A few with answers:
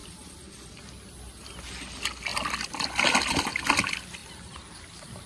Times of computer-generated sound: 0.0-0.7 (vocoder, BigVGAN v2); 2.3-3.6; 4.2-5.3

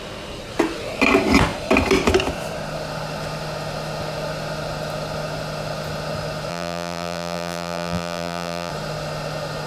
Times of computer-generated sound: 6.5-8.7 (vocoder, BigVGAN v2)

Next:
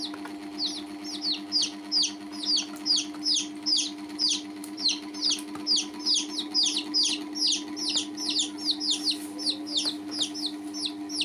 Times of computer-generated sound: 3.7-5.3 (vocoder, BigVGAN v2)